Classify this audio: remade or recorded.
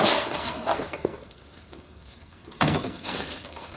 remade